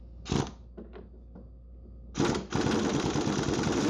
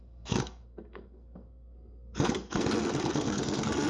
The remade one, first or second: second